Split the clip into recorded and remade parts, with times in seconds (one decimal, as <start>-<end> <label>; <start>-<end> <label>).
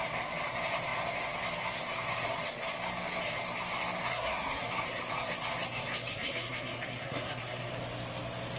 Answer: 0.0-4.1 recorded; 4.1-4.7 remade; 4.7-6.1 recorded; 6.1-7.7 remade; 7.7-8.6 recorded